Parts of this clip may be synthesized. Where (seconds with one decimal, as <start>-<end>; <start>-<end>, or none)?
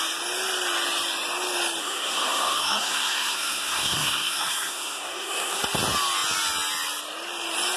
1.8-5.6